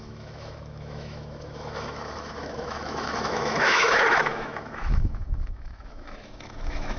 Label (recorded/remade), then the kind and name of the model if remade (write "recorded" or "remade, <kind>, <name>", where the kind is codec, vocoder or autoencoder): remade, autoencoder, DAC-VAE